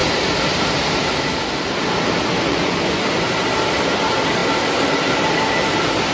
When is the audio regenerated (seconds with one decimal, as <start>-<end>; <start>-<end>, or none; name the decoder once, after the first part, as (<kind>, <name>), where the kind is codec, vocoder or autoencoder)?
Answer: 2.5-3.0 (vocoder, Vocos)